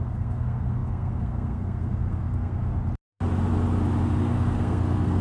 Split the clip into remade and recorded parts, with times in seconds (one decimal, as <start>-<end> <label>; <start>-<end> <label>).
0.0-2.7 remade; 2.7-4.2 recorded; 4.2-5.2 remade